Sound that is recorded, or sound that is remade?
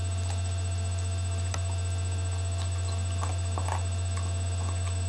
recorded